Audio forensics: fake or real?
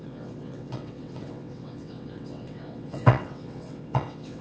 fake